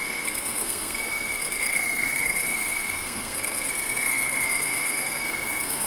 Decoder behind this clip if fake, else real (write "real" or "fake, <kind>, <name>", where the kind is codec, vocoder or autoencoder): fake, codec, SNAC